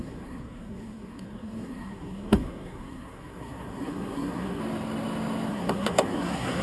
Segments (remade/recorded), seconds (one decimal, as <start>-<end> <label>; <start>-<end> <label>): 0.0-4.6 remade; 4.6-5.5 recorded; 5.5-6.6 remade